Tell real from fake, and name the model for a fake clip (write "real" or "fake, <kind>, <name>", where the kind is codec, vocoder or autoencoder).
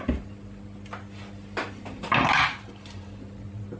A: real